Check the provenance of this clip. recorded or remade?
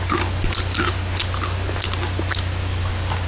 recorded